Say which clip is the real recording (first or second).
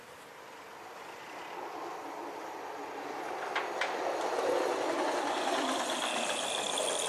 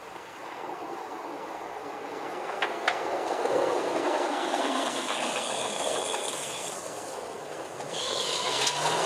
first